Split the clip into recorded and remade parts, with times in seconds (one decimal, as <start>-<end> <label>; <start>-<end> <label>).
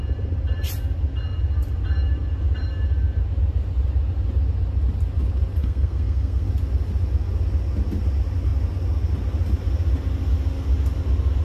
0.0-5.6 recorded; 5.6-6.5 remade; 6.5-11.4 recorded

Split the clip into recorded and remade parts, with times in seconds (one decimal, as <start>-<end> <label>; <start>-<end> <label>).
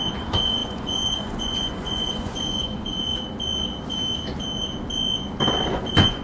0.0-3.1 remade; 3.1-5.7 recorded; 5.7-6.2 remade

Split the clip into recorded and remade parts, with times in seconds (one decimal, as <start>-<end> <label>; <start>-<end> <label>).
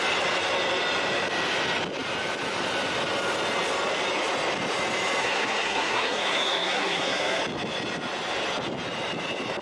0.0-5.2 recorded; 5.2-7.4 remade; 7.4-9.6 recorded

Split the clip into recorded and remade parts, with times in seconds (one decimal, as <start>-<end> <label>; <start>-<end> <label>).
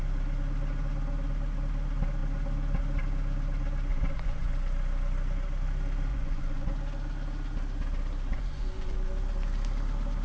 0.0-3.9 recorded; 3.9-4.5 remade; 4.5-6.1 recorded; 6.1-6.7 remade; 6.7-8.3 recorded; 8.3-9.1 remade; 9.1-10.2 recorded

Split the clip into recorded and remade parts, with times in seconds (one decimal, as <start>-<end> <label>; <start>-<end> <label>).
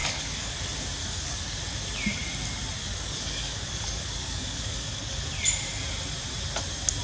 0.0-0.5 remade; 0.5-1.0 recorded; 1.0-1.6 remade; 1.6-2.8 recorded; 2.8-5.1 remade; 5.1-7.0 recorded